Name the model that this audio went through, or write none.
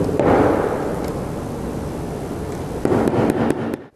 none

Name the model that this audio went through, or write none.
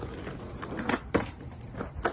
none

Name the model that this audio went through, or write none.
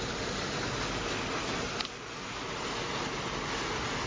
none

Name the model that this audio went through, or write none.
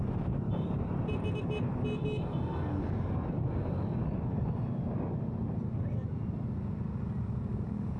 none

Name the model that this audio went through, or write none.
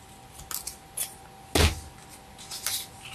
none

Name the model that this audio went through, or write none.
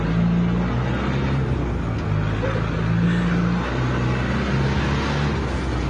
none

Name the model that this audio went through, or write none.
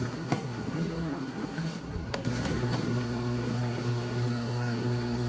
codec, SNAC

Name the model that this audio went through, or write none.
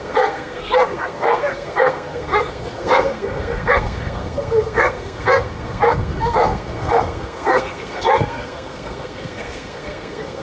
codec, SNAC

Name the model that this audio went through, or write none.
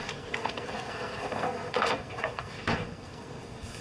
codec, SNAC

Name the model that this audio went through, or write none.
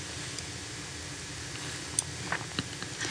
none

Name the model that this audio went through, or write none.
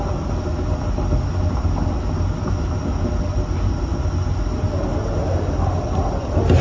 none